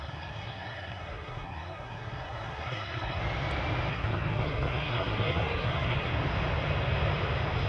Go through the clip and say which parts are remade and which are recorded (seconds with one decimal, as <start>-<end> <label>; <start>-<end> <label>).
0.0-3.2 remade; 3.2-3.9 recorded; 3.9-6.1 remade; 6.1-7.7 recorded